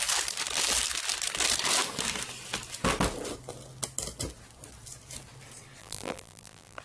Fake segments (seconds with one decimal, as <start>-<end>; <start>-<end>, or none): 5.8-6.8